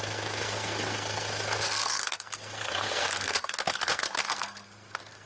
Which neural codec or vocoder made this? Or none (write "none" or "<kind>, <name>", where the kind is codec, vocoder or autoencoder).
codec, SNAC